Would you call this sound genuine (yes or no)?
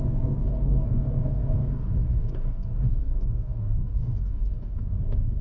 no